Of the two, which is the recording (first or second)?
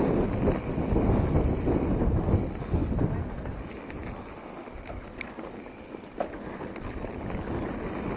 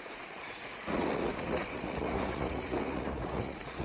first